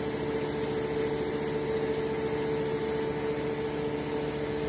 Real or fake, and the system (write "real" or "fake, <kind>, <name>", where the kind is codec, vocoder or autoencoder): real